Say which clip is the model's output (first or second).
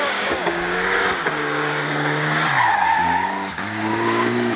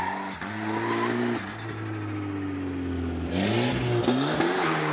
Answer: first